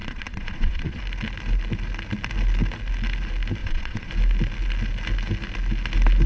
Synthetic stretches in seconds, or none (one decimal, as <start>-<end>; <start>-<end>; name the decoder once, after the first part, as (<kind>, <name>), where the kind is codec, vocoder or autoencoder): 0.0-1.0 (vocoder, Vocos); 3.6-4.1